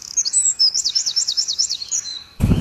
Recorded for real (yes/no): no